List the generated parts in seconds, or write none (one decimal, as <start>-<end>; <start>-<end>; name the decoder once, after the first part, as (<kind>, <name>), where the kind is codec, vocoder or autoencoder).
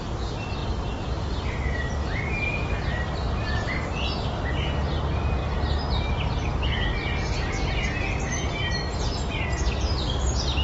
none